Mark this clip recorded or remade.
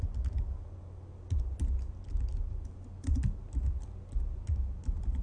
recorded